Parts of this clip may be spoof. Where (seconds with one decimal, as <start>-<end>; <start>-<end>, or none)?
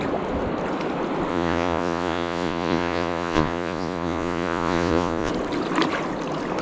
1.3-5.3